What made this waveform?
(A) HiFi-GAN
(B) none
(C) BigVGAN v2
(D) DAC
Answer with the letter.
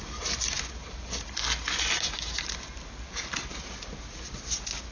B